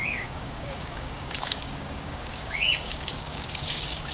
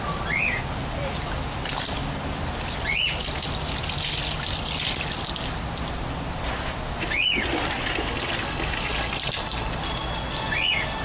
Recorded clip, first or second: second